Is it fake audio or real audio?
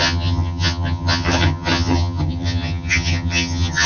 fake